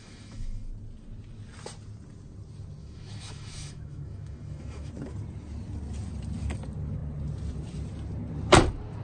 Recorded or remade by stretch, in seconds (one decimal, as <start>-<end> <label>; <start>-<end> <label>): 0.0-0.7 remade; 0.7-2.8 recorded; 2.8-4.9 remade; 4.9-9.0 recorded